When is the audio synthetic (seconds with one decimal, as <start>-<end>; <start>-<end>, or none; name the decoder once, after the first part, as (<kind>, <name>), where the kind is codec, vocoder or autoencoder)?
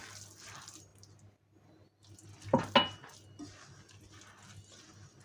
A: none